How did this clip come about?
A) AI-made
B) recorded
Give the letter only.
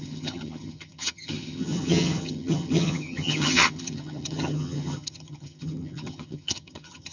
A